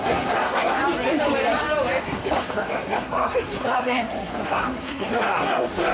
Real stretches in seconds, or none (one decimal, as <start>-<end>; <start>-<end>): 0.8-2.0